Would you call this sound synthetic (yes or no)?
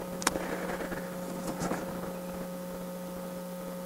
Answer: no